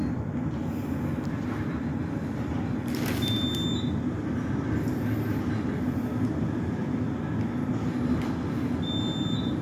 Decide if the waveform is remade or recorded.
recorded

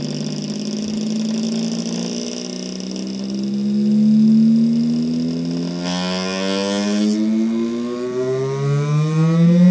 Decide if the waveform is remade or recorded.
recorded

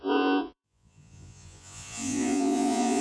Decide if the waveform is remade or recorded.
remade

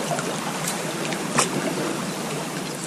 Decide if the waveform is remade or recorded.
recorded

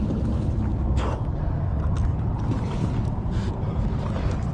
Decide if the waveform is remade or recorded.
recorded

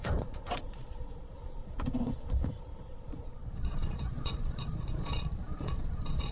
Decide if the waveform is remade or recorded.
remade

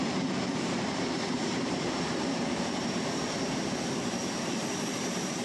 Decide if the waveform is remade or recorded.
remade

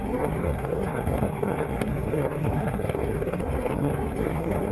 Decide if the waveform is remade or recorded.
remade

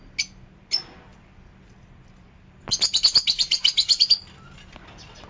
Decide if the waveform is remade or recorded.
recorded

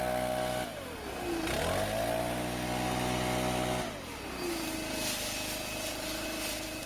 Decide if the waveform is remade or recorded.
recorded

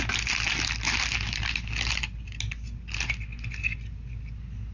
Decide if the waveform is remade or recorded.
recorded